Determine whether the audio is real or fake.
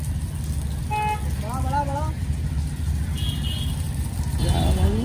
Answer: real